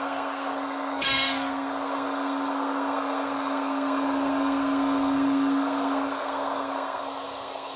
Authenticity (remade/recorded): remade